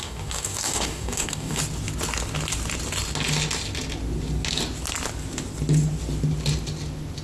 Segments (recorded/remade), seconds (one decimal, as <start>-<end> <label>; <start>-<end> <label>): 0.0-1.6 remade; 1.6-7.2 recorded